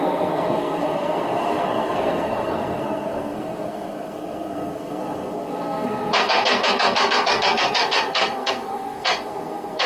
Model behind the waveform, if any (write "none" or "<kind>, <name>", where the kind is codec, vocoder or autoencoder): codec, SNAC